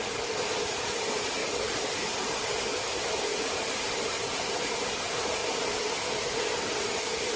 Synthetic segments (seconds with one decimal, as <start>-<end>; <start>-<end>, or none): 0.0-1.4; 2.2-2.7; 3.5-5.4; 7.0-7.4